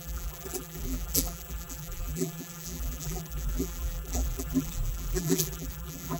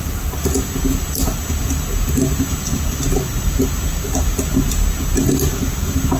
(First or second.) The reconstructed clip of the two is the first